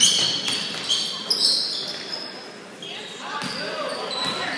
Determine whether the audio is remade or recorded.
recorded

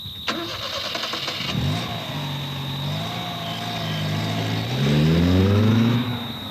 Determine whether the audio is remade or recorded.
recorded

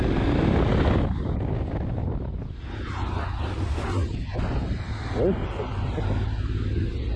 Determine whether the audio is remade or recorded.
recorded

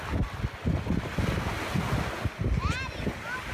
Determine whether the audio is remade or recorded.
recorded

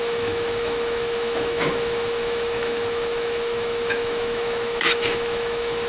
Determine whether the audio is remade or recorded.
remade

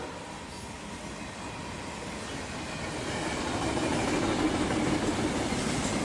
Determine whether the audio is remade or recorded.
recorded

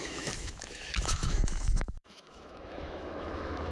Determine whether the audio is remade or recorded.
remade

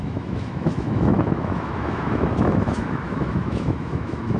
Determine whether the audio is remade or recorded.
remade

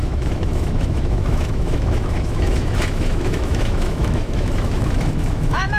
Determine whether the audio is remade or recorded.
remade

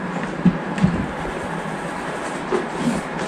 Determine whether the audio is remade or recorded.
recorded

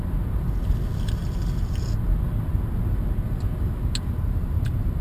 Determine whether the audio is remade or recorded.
recorded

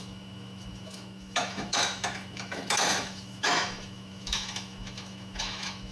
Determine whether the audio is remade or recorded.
remade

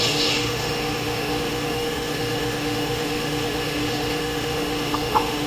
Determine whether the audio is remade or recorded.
remade